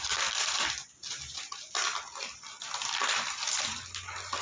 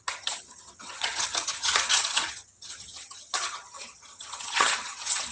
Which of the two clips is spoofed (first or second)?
second